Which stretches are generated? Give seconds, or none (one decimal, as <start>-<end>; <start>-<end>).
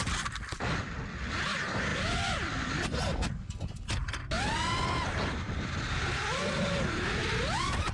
none